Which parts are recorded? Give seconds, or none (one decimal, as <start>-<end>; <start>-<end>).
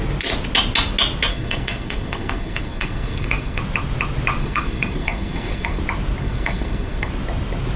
0.0-1.3; 3.6-4.4; 5.8-6.2; 7.1-7.8